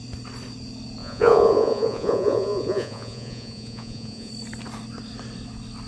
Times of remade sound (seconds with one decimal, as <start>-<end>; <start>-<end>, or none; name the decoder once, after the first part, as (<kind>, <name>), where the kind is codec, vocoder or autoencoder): 1.0-4.3 (vocoder, Vocos)